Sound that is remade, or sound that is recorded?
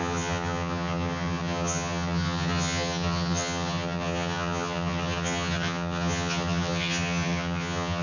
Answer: remade